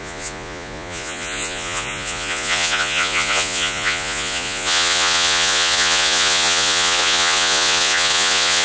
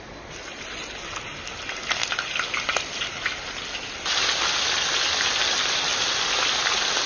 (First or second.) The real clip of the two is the second